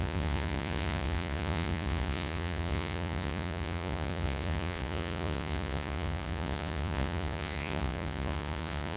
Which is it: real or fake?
fake